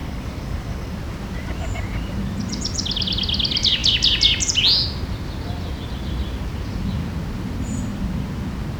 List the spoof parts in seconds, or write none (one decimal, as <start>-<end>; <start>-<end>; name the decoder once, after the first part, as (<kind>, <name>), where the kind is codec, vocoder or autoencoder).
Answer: 0.0-1.0 (codec, DAC)